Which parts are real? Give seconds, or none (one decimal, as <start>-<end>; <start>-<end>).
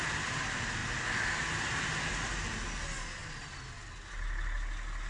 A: 0.0-5.1